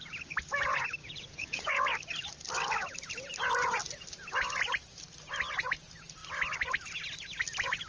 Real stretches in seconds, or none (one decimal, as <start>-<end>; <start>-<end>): 0.0-1.0; 1.7-7.9